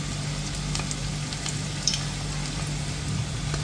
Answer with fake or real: real